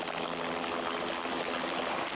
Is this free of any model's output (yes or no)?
yes